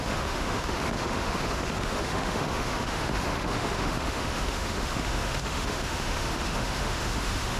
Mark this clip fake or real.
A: fake